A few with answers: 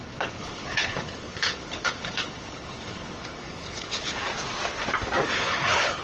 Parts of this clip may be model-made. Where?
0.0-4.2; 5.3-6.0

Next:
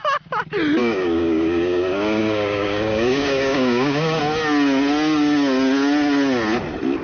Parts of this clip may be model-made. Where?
0.8-4.2

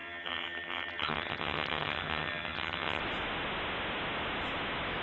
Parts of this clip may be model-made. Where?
0.0-3.0

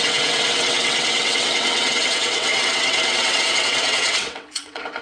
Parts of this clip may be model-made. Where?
0.0-5.0

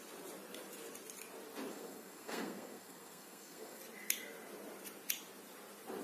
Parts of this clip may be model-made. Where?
1.7-3.8